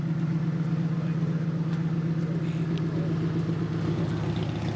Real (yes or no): yes